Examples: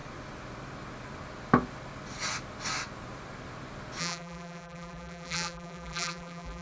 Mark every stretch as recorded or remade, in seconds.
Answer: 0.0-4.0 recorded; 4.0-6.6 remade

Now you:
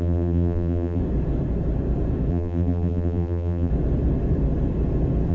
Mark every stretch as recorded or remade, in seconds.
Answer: 0.0-1.0 remade; 1.0-2.3 recorded; 2.3-3.7 remade; 3.7-5.3 recorded

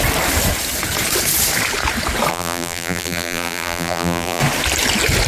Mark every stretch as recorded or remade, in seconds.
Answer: 0.0-2.3 recorded; 2.3-4.4 remade; 4.4-5.3 recorded

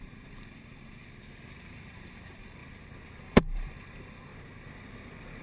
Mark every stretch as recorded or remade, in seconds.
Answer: 0.0-1.0 remade; 1.0-1.7 recorded; 1.7-2.6 remade; 2.6-3.2 recorded; 3.2-4.3 remade; 4.3-5.4 recorded

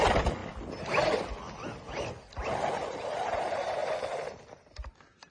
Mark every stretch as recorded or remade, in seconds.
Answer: 0.0-3.8 recorded; 3.8-4.3 remade; 4.3-5.3 recorded

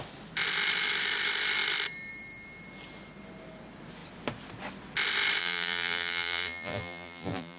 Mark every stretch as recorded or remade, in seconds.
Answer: 0.0-5.4 recorded; 5.4-7.6 remade